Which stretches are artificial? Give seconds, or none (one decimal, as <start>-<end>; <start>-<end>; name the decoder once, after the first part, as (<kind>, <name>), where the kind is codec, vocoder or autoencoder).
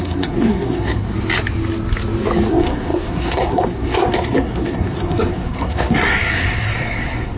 0.0-1.1 (codec, SNAC); 2.5-7.4